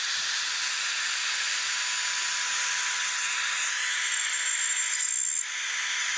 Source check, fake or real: real